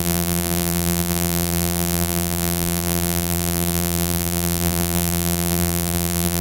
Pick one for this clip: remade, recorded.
remade